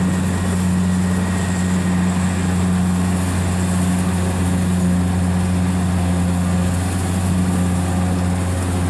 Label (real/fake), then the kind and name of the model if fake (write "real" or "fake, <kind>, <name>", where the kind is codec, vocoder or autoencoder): real